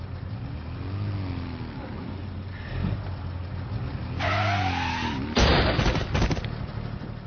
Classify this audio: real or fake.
real